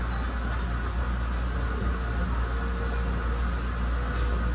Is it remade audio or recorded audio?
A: recorded